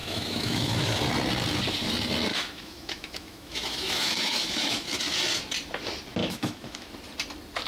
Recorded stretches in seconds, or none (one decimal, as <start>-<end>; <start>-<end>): 1.0-2.3; 5.0-6.2; 6.9-7.7